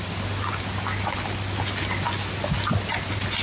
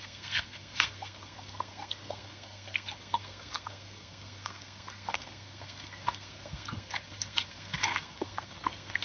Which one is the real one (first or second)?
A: first